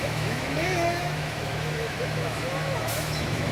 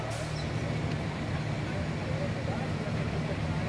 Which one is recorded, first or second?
second